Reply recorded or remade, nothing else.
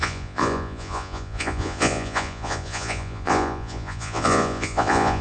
remade